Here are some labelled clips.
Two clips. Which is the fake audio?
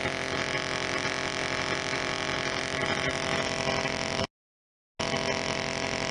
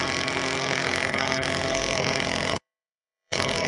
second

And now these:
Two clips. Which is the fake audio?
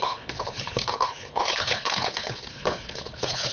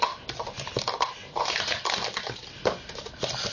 first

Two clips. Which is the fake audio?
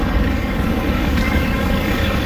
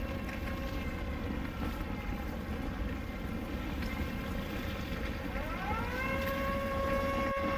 first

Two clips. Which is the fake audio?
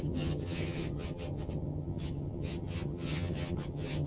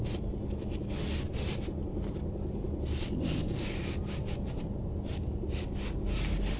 first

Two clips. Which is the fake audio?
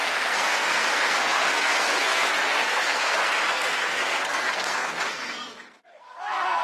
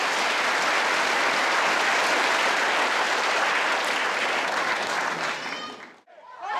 first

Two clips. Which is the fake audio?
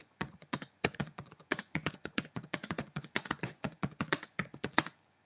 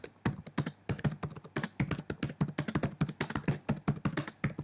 first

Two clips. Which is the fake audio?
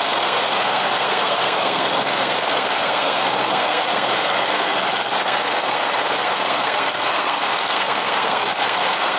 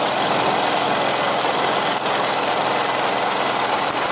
first